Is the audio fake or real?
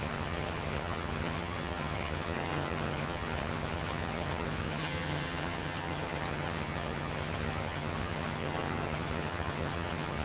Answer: fake